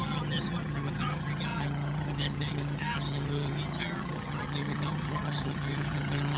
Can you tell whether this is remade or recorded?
remade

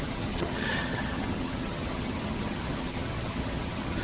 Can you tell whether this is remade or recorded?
remade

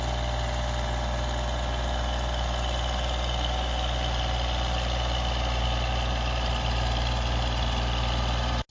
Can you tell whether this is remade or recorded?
recorded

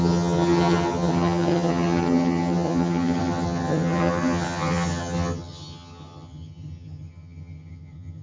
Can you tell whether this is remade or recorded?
remade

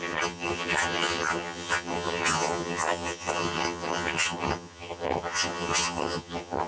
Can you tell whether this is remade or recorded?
remade